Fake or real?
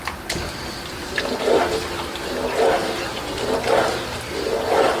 real